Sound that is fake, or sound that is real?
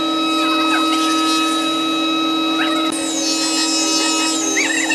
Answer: real